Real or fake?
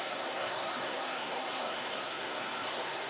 fake